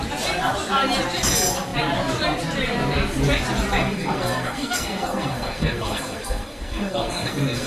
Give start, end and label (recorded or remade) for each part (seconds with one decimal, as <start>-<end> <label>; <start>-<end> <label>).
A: 0.0-3.8 recorded; 3.8-7.7 remade